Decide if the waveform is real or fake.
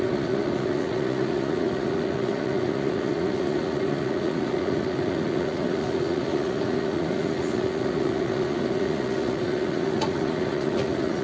fake